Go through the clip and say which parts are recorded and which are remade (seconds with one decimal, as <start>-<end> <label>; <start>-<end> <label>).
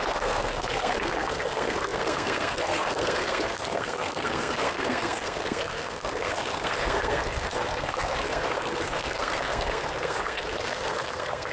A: 0.0-11.5 remade